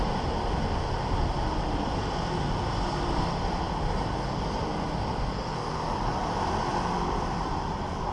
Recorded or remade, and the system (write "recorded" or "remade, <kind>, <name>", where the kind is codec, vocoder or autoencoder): recorded